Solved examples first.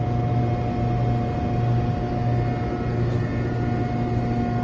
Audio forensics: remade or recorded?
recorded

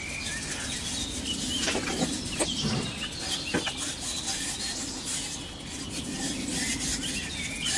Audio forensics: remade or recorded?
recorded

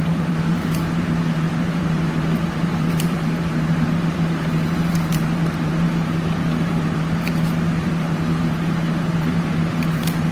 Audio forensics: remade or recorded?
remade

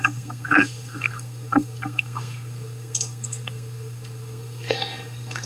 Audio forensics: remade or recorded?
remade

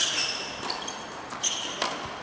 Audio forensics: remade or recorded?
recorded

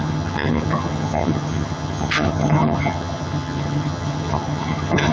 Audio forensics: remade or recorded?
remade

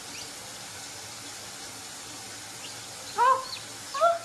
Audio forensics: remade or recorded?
recorded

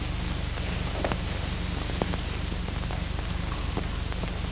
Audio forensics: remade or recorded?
recorded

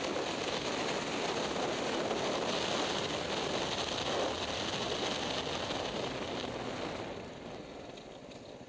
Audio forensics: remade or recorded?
recorded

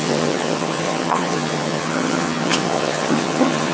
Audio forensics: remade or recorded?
remade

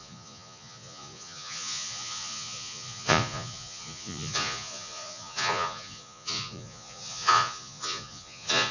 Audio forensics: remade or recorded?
remade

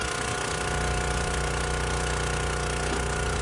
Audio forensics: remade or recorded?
recorded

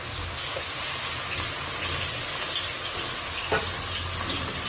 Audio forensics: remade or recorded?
recorded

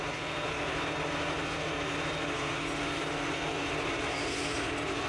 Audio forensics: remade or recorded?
recorded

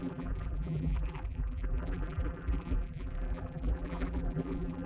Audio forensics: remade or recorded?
remade